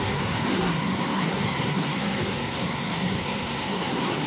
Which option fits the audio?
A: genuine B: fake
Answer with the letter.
B